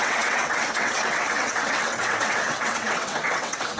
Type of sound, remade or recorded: remade